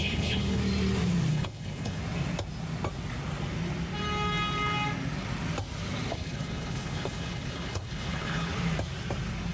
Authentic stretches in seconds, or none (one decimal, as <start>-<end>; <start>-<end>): 0.6-1.3; 2.0-6.1; 8.5-9.5